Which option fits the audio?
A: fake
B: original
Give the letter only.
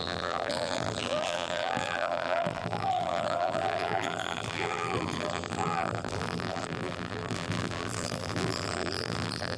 A